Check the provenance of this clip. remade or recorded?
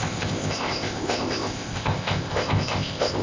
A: remade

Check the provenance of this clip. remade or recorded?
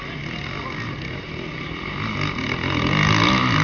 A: recorded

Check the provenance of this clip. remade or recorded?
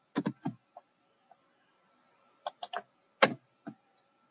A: recorded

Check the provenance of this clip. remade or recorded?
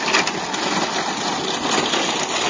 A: recorded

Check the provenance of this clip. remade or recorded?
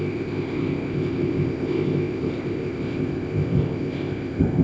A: remade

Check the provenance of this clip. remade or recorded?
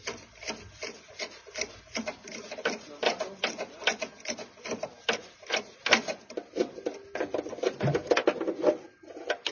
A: recorded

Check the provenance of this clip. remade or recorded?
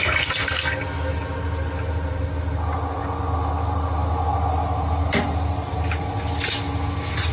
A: recorded